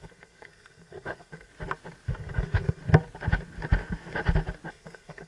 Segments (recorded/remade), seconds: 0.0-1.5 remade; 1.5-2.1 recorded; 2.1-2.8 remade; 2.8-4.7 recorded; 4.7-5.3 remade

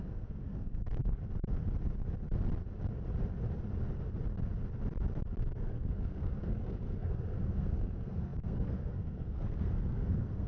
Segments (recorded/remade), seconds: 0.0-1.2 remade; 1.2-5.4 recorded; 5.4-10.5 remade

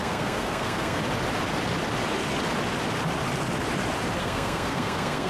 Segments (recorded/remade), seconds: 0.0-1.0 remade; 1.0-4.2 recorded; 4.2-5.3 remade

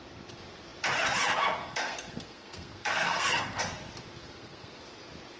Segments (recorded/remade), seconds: 0.0-1.6 recorded; 1.6-3.6 remade; 3.6-4.2 recorded; 4.2-4.8 remade; 4.8-5.4 recorded

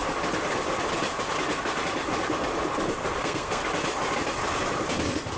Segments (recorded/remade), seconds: 0.0-3.2 recorded; 3.2-3.6 remade; 3.6-5.4 recorded

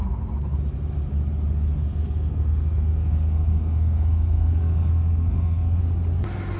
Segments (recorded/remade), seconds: 0.0-1.8 recorded; 1.8-5.8 remade; 5.8-6.6 recorded

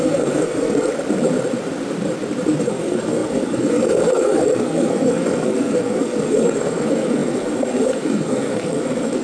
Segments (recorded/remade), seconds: 0.0-0.9 remade; 0.9-2.6 recorded; 2.6-9.2 remade

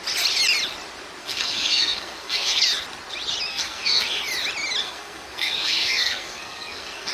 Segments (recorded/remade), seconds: 0.0-1.2 recorded; 1.2-2.6 remade; 2.6-3.5 recorded; 3.5-4.2 remade; 4.2-4.8 recorded; 4.8-7.1 remade